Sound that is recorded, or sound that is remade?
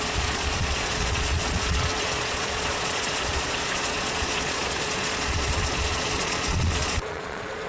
remade